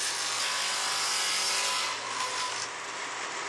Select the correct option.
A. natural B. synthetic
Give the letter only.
A